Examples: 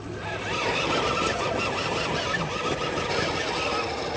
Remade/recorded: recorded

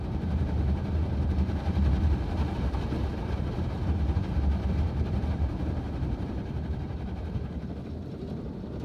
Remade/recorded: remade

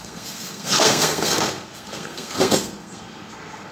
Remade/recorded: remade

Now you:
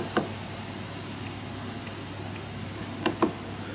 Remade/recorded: recorded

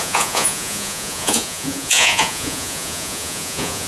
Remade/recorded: remade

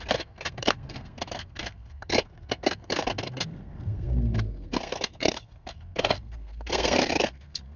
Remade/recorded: remade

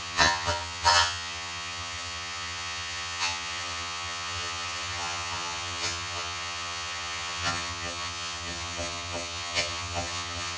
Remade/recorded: remade